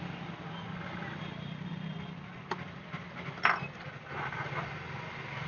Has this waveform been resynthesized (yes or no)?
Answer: no